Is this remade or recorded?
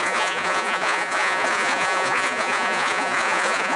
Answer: remade